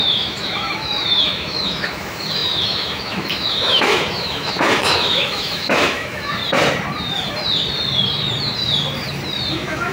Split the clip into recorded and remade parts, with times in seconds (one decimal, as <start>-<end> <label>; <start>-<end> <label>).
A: 0.0-6.4 remade; 6.4-9.5 recorded; 9.5-9.9 remade